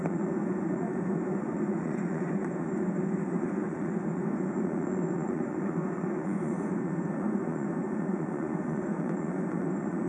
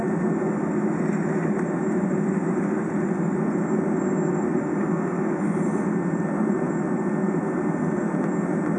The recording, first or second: second